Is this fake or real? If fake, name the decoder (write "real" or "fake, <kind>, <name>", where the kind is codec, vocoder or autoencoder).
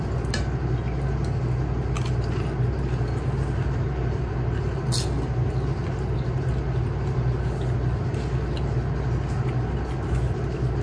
real